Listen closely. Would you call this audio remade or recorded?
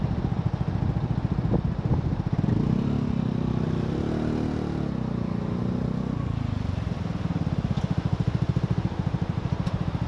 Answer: recorded